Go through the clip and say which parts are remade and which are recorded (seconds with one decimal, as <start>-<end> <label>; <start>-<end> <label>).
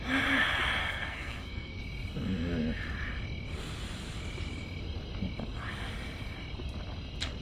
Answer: 0.0-0.8 recorded; 0.8-1.8 remade; 1.8-7.4 recorded